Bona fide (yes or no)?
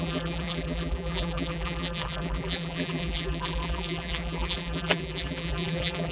no